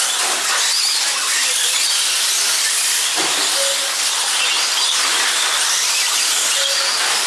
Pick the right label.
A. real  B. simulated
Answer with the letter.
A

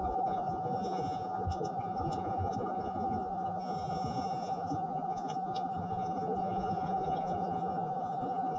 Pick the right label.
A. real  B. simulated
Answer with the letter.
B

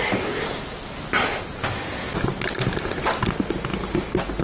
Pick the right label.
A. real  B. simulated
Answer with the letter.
A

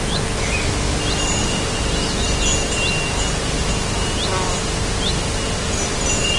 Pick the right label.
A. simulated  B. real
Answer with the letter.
B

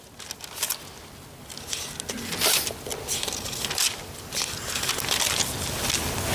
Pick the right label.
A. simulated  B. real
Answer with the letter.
B